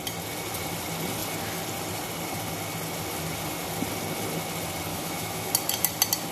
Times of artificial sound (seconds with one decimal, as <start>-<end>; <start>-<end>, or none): 4.9-5.5